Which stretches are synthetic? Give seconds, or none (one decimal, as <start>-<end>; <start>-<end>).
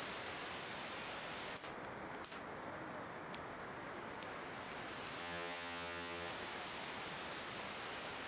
5.2-6.3